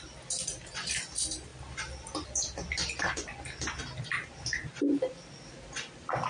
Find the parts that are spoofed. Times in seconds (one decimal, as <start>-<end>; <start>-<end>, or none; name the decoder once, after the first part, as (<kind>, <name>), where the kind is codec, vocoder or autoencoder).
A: none